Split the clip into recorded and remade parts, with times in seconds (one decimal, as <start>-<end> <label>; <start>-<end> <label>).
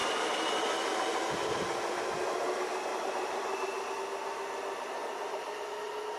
0.0-2.9 recorded; 2.9-3.9 remade; 3.9-6.2 recorded